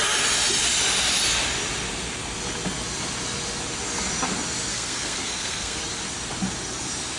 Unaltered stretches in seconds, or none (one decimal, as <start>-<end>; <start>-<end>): 0.0-4.7; 5.8-7.2

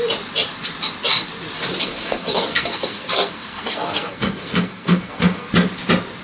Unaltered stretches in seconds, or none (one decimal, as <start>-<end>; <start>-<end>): 0.0-1.8; 5.5-6.2

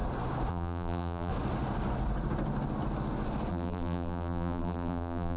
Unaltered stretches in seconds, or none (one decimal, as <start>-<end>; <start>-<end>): 0.0-0.5; 1.3-3.5